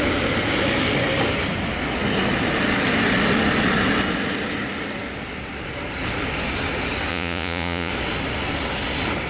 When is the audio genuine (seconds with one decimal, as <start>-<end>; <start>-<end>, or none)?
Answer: 0.0-7.1; 7.9-9.3